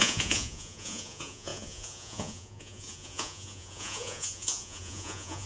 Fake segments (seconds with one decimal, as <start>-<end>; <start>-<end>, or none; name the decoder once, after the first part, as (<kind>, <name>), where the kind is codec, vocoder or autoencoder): 0.0-5.5 (vocoder, Vocos)